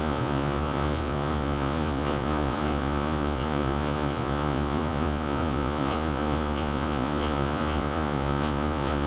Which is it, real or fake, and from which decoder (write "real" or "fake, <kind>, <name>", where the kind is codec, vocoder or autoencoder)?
fake, vocoder, Vocos